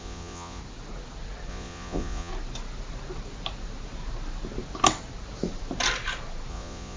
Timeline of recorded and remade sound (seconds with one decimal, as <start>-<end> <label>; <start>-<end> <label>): 0.0-0.6 remade; 0.6-1.5 recorded; 1.5-2.3 remade; 2.3-6.5 recorded; 6.5-7.0 remade